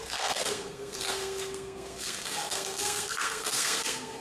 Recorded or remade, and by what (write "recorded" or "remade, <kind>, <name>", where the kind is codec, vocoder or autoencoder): remade, codec, SNAC